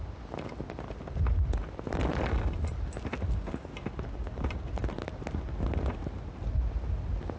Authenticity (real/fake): real